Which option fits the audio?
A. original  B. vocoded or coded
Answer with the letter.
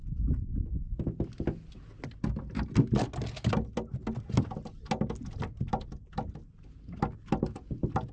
A